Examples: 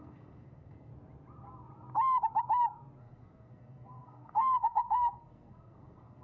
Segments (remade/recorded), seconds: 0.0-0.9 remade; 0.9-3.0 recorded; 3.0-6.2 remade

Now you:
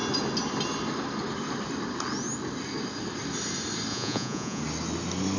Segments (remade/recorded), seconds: 0.0-3.9 recorded; 3.9-4.6 remade; 4.6-5.4 recorded

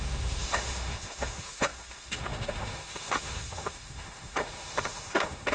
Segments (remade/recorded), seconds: 0.0-5.5 remade

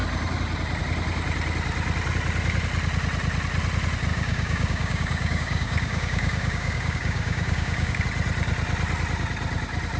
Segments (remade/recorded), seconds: 0.0-4.1 recorded; 4.1-8.0 remade; 8.0-10.0 recorded

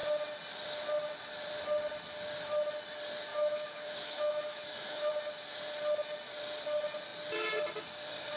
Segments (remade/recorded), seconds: 0.0-3.3 recorded; 3.3-5.1 remade; 5.1-8.4 recorded

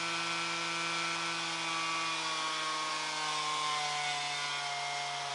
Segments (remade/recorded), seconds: 0.0-5.3 recorded

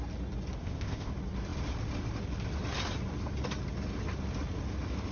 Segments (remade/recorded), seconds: 0.0-0.6 recorded; 0.6-1.1 remade; 1.1-5.1 recorded